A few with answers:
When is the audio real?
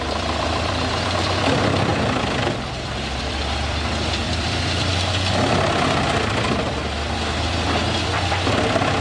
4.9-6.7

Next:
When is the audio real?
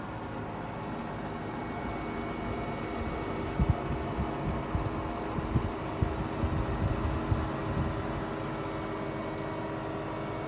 0.0-10.5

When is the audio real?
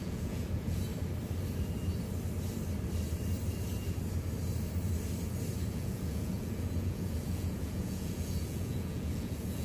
0.9-5.7